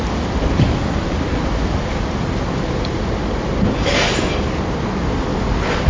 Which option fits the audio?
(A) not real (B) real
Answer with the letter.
B